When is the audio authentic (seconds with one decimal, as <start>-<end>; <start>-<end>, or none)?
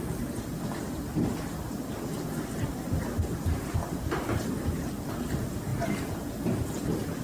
0.0-7.2